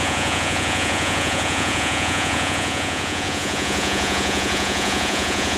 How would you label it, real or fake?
fake